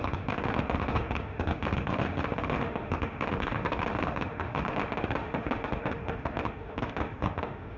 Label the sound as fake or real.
fake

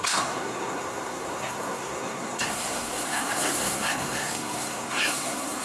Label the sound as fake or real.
fake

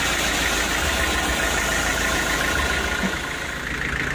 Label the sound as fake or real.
real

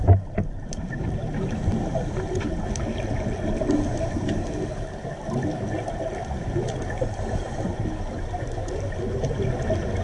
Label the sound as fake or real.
real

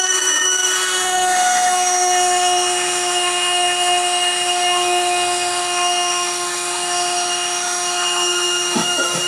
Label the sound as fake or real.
fake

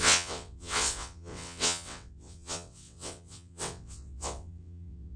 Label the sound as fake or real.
fake